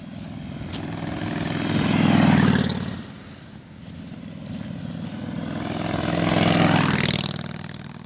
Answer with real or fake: real